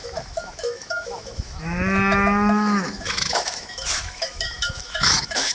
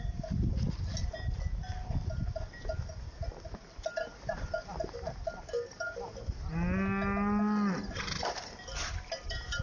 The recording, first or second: second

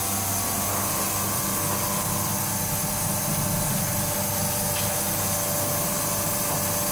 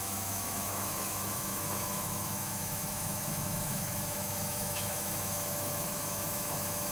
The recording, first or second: first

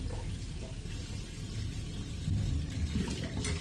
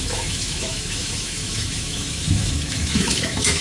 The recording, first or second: first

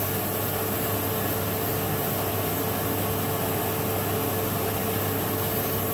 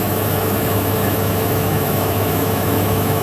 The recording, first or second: first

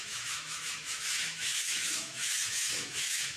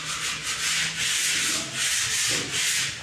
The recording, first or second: second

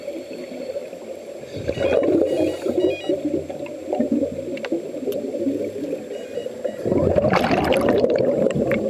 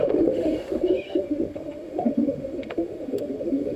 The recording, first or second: first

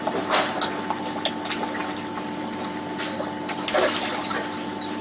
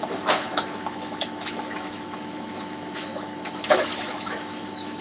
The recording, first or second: first